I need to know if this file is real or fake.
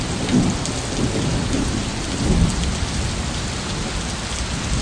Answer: real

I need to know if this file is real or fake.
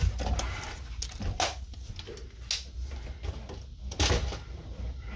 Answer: real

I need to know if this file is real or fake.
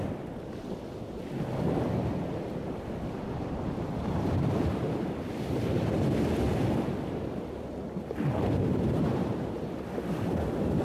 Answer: real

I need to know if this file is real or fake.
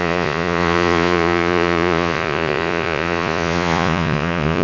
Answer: fake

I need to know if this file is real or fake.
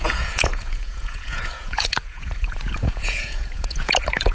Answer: fake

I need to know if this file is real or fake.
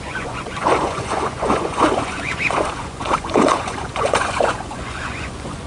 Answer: fake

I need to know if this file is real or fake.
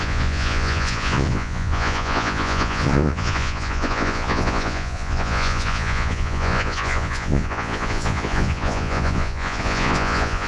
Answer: fake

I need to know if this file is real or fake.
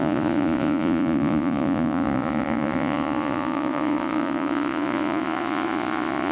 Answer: fake